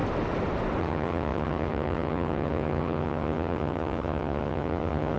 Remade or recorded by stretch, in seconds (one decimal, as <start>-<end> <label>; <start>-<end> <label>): 0.0-0.8 recorded; 0.8-5.2 remade